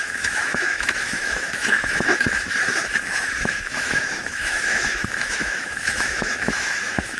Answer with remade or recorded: remade